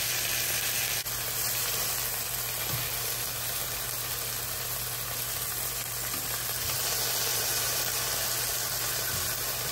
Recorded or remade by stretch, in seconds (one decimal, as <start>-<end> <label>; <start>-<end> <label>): 0.0-7.3 recorded; 7.3-8.0 remade; 8.0-9.7 recorded